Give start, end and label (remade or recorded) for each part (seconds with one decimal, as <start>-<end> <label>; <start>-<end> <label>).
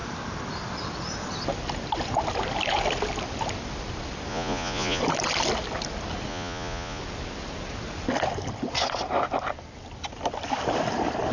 0.0-4.3 recorded; 4.3-5.0 remade; 5.0-6.3 recorded; 6.3-7.0 remade; 7.0-11.3 recorded